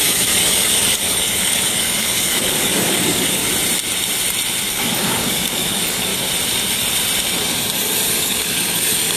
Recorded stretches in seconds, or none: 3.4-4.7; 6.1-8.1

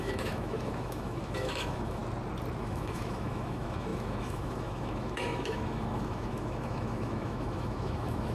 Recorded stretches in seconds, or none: 2.0-2.6

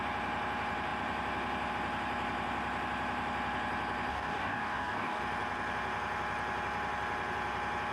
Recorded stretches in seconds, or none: 0.0-4.1; 5.2-7.9